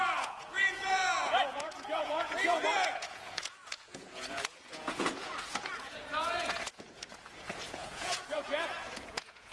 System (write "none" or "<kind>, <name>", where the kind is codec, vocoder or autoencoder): vocoder, Vocos